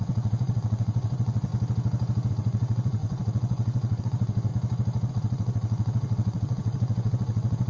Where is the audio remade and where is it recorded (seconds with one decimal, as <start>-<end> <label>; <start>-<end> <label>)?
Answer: 0.0-1.5 remade; 1.5-2.3 recorded; 2.3-4.5 remade; 4.5-5.1 recorded; 5.1-7.7 remade